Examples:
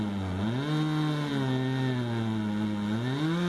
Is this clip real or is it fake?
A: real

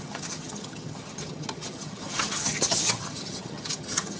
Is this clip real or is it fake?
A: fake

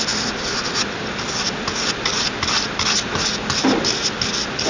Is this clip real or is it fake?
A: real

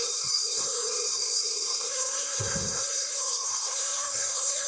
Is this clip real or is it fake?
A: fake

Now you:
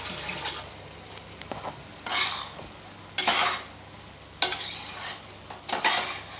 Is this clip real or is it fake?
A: real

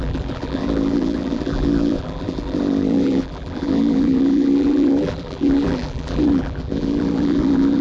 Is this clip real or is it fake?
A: fake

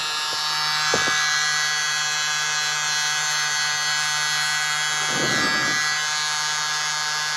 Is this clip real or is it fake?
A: real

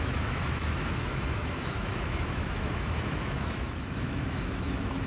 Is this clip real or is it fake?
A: fake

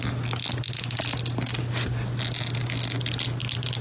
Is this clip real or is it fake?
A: real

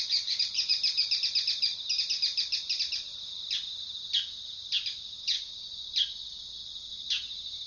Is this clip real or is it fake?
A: real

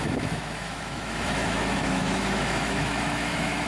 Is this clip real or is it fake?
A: fake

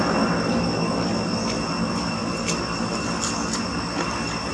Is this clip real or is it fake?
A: real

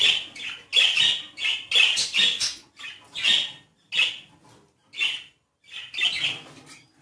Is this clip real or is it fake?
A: real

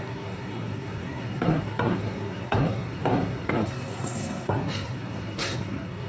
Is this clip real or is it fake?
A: fake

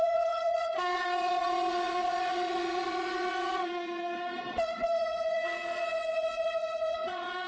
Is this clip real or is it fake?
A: fake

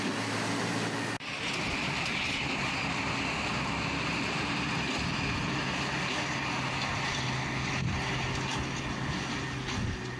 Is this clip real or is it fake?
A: real